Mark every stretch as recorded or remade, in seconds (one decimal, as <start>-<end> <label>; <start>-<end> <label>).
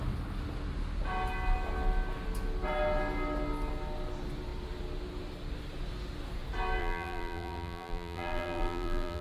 0.0-6.8 recorded; 6.8-9.2 remade